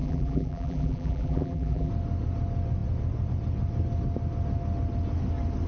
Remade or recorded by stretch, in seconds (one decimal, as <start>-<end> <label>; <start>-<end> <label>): 0.0-1.9 remade; 1.9-5.7 recorded